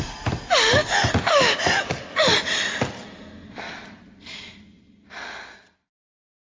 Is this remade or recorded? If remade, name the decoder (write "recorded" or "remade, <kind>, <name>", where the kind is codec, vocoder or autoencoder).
recorded